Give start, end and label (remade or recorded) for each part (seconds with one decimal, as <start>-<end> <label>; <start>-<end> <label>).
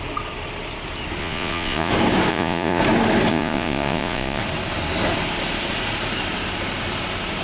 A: 0.0-1.2 recorded; 1.2-1.9 remade; 1.9-2.3 recorded; 2.3-2.8 remade; 2.8-3.3 recorded; 3.3-4.4 remade; 4.4-7.4 recorded